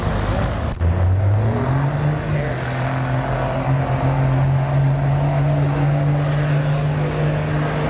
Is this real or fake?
real